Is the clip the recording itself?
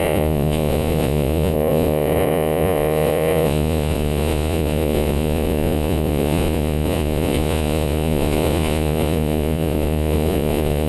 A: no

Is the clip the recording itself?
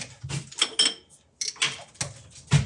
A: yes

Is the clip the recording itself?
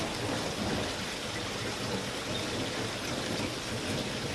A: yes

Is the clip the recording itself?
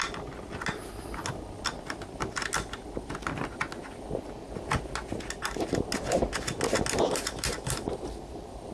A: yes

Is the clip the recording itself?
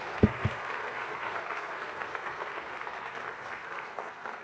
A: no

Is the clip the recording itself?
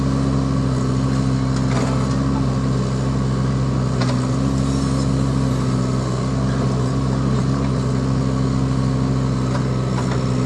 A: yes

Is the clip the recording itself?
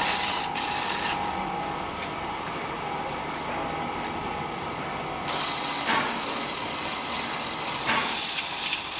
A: yes